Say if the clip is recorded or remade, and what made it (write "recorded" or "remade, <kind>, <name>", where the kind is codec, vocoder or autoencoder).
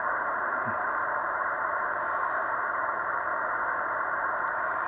remade, vocoder, BigVGAN v2